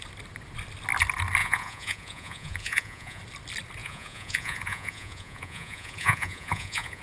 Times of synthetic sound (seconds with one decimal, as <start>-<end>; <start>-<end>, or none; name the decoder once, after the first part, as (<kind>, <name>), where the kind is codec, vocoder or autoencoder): 1.4-3.2 (vocoder, Vocos); 3.8-7.0